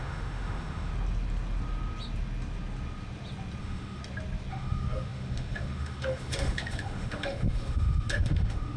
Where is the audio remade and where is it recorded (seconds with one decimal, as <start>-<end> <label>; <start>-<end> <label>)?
0.0-0.9 remade; 0.9-3.6 recorded; 3.6-4.0 remade; 4.0-4.5 recorded; 4.5-8.8 remade